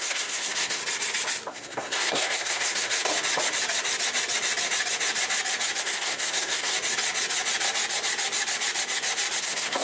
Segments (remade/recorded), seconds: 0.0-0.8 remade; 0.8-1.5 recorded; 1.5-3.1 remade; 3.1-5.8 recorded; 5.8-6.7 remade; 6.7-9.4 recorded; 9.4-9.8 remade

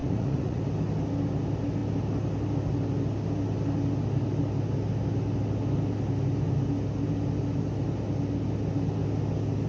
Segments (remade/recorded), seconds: 0.0-0.6 remade; 0.6-9.7 recorded

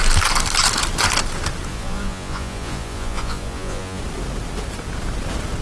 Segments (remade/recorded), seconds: 0.0-1.7 recorded; 1.7-4.0 remade; 4.0-5.6 recorded

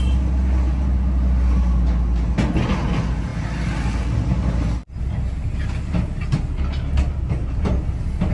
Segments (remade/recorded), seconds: 0.0-8.3 recorded